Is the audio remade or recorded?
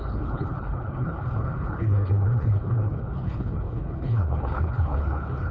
remade